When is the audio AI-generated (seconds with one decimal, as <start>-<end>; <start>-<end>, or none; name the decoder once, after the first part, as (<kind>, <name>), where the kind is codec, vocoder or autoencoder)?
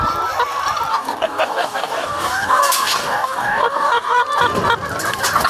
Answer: 0.9-4.2 (codec, DAC)